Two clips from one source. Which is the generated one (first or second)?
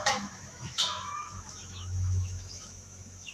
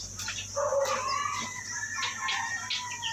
first